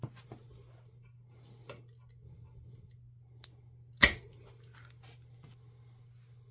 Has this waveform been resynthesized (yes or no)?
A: no